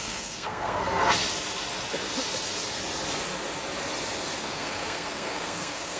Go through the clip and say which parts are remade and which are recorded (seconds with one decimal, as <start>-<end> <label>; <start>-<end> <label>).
0.0-1.0 remade; 1.0-4.4 recorded; 4.4-6.0 remade